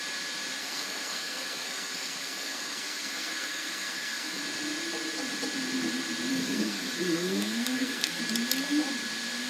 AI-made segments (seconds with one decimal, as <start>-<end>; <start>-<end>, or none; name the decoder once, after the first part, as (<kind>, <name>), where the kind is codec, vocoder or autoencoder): 0.6-4.4 (codec, SNAC); 6.3-8.2